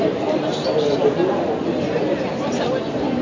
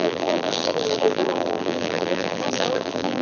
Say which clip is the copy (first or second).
second